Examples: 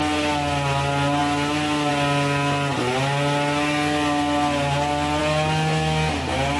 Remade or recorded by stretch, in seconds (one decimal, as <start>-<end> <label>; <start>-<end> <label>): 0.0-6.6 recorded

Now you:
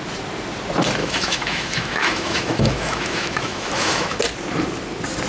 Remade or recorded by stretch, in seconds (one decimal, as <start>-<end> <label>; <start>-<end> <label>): 0.0-1.0 recorded; 1.0-4.2 remade; 4.2-5.3 recorded

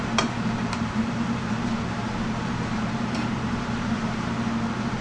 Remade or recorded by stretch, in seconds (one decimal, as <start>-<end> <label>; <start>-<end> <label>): 0.0-5.0 remade

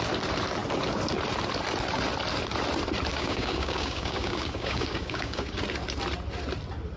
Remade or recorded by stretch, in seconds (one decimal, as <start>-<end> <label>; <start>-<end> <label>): 0.0-3.1 recorded; 3.1-5.6 remade; 5.6-7.0 recorded

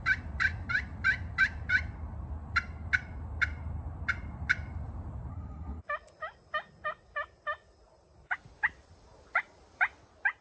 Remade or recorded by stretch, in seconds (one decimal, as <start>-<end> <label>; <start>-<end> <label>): 0.0-5.3 recorded; 5.3-5.8 remade; 5.8-10.4 recorded